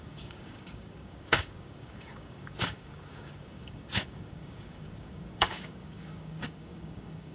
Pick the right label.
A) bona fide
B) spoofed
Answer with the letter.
B